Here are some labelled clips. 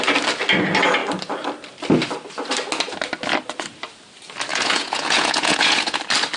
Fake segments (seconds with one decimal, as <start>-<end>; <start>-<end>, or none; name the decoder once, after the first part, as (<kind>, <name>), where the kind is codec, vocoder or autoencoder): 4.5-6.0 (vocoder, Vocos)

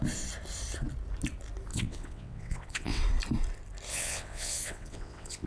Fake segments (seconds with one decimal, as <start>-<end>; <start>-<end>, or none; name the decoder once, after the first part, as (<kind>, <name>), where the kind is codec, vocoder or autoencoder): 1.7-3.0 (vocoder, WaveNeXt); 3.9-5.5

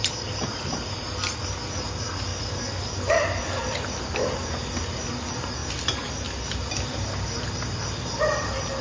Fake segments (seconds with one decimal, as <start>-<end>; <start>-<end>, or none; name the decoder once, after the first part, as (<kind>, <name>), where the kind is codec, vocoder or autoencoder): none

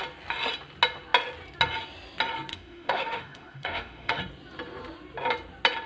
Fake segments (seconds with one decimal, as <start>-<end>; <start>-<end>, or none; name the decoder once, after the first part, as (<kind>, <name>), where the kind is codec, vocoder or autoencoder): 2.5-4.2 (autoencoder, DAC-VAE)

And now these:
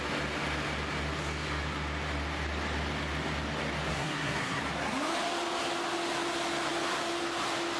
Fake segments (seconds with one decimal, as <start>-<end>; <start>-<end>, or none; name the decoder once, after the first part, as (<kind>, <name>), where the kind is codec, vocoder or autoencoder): 3.9-4.6 (codec, SNAC)